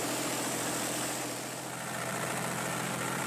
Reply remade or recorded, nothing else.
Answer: remade